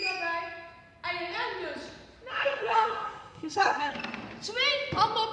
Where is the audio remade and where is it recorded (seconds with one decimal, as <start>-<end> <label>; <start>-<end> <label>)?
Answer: 0.0-2.3 recorded; 2.3-3.9 remade; 3.9-5.3 recorded